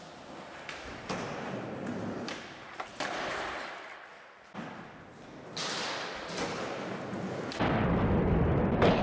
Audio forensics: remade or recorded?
recorded